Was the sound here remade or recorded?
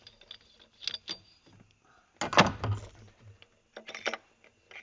recorded